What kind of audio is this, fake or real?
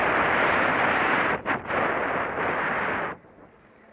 real